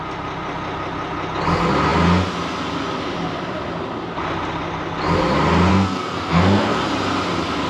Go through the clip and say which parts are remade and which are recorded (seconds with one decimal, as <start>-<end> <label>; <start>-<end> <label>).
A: 0.0-5.7 recorded; 5.7-6.8 remade; 6.8-7.7 recorded

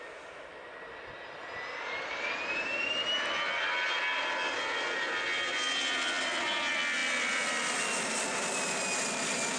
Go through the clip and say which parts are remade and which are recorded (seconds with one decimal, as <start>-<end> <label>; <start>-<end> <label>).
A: 0.0-9.6 recorded

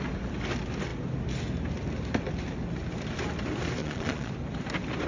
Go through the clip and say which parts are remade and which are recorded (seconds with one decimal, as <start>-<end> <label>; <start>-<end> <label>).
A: 0.0-3.8 recorded; 3.8-4.3 remade; 4.3-5.1 recorded

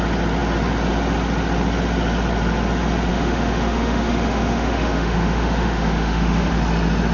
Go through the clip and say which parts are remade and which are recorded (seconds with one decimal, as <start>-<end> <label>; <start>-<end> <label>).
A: 0.0-3.1 recorded; 3.1-6.5 remade; 6.5-7.1 recorded

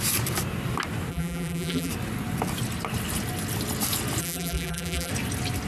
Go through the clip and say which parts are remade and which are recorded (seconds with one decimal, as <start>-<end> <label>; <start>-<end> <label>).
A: 0.0-1.1 recorded; 1.1-1.9 remade; 1.9-4.2 recorded; 4.2-5.1 remade; 5.1-5.7 recorded

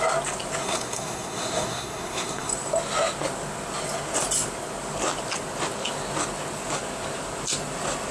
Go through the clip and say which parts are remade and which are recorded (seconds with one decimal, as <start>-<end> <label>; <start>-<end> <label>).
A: 0.0-0.6 recorded; 0.6-2.5 remade; 2.5-8.1 recorded

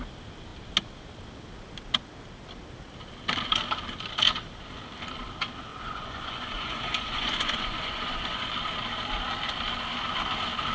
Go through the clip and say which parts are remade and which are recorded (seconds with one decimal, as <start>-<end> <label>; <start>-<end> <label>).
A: 0.0-5.7 recorded; 5.7-8.5 remade; 8.5-10.7 recorded

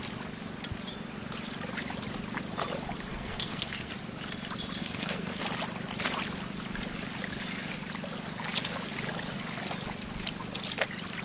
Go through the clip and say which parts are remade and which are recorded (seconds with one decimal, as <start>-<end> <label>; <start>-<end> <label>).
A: 0.0-3.1 recorded; 3.1-3.9 remade; 3.9-4.8 recorded; 4.8-5.4 remade; 5.4-11.2 recorded